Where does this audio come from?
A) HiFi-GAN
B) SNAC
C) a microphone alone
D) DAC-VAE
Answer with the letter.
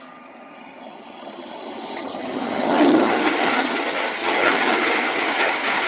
A